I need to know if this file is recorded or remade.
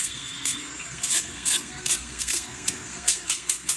remade